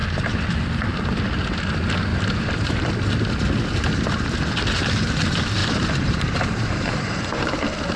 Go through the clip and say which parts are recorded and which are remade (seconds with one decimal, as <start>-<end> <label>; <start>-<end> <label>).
0.0-2.1 recorded; 2.1-2.9 remade; 2.9-5.6 recorded; 5.6-7.6 remade; 7.6-8.0 recorded